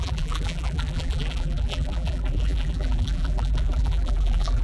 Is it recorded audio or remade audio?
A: remade